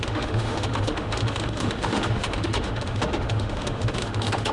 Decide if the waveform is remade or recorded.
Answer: remade